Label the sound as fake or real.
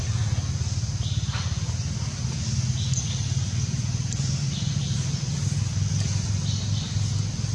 real